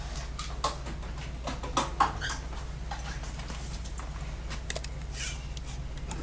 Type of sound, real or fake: real